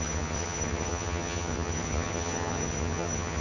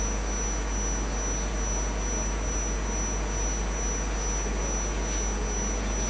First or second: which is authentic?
second